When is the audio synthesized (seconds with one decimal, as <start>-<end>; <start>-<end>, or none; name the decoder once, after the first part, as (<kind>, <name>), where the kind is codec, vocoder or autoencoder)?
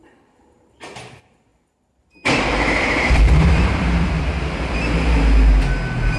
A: 1.5-4.3 (vocoder, BigVGAN v2)